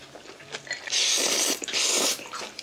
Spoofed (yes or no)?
yes